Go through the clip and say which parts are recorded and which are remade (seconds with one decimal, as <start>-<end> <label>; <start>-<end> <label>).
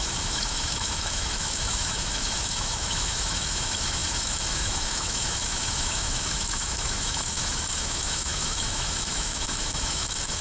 0.0-10.4 remade